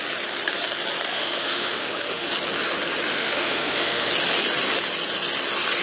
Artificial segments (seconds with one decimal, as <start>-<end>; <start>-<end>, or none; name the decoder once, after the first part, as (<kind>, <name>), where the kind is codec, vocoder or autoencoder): 1.1-2.3 (autoencoder, DAC-VAE); 3.1-4.1